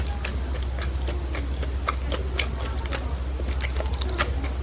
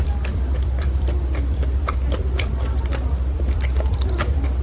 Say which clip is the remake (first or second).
second